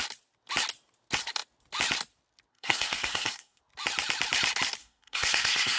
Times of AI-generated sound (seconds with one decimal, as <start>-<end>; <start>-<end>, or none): 2.5-3.6; 4.8-5.8